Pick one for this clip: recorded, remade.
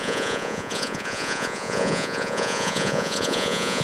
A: remade